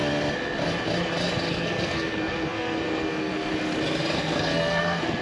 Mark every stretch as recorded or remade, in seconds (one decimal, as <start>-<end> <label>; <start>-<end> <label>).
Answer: 0.0-1.5 recorded; 1.5-3.5 remade; 3.5-4.1 recorded; 4.1-5.2 remade